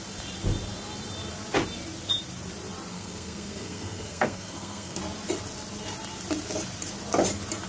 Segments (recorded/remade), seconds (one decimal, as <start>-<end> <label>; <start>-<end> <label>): 0.0-2.9 recorded; 2.9-5.0 remade; 5.0-7.7 recorded